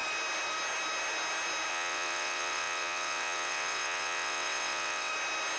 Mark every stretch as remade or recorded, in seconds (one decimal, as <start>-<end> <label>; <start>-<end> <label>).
0.0-1.7 recorded; 1.7-5.1 remade; 5.1-5.6 recorded